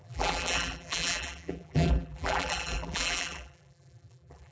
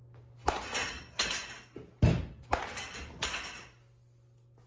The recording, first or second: second